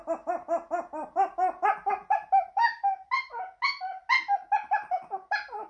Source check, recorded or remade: recorded